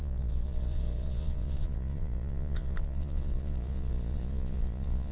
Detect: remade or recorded remade